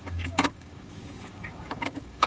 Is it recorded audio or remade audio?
remade